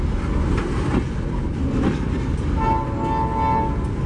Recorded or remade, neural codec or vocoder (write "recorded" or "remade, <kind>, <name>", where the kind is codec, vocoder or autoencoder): recorded